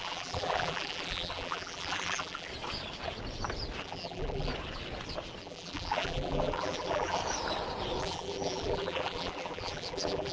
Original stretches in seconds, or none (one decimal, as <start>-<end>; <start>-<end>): 2.5-3.8; 4.5-5.4; 7.2-8.0